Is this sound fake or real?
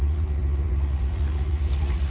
fake